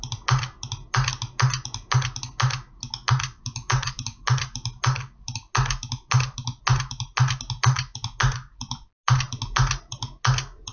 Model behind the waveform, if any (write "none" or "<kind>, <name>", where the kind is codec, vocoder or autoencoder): none